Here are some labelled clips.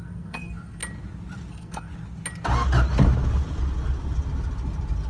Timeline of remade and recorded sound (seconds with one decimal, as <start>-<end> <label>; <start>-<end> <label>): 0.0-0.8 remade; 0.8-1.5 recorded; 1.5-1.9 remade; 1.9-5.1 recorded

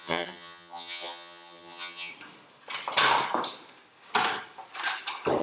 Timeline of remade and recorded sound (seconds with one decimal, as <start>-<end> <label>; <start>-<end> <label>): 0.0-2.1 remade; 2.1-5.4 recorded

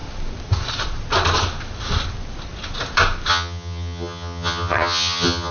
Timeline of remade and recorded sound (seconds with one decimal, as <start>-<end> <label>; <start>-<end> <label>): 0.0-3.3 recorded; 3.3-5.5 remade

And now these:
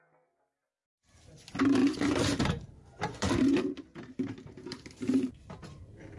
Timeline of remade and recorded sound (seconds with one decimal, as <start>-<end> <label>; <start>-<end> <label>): 0.0-1.8 recorded; 1.8-5.5 remade; 5.5-6.2 recorded

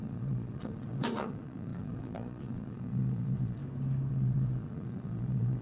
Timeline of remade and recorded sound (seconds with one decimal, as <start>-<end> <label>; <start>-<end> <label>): 0.0-3.6 remade; 3.6-4.1 recorded; 4.1-5.6 remade

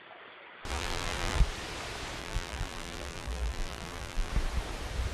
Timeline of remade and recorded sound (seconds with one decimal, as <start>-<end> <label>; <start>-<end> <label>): 0.0-0.7 recorded; 0.7-1.4 remade; 1.4-2.2 recorded; 2.2-4.3 remade; 4.3-5.1 recorded

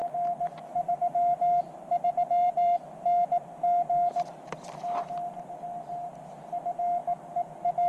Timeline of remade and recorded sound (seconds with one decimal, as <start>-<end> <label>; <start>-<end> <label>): 0.0-3.0 remade; 3.0-7.9 recorded